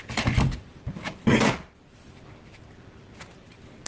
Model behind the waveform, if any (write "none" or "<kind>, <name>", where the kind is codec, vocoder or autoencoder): none